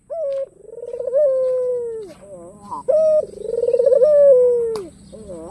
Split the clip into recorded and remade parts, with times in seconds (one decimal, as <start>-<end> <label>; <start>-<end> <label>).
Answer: 0.0-5.5 recorded